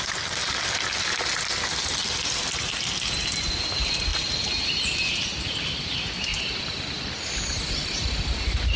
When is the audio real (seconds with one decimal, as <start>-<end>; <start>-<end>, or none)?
0.0-8.8